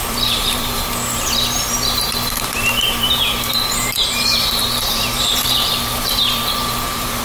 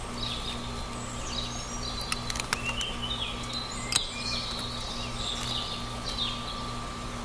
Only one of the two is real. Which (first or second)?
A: second